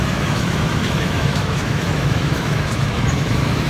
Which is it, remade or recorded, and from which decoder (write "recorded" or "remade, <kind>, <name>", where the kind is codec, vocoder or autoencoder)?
remade, autoencoder, DAC-VAE